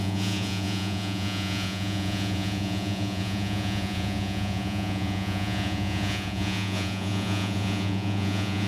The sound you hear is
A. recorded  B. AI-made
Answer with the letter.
B